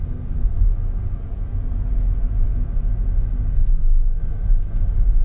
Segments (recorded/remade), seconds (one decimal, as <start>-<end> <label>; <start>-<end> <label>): 0.0-0.7 recorded; 0.7-3.8 remade; 3.8-5.2 recorded